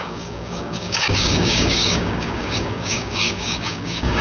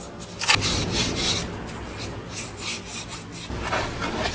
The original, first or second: second